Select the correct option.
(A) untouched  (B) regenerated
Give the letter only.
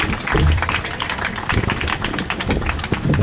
B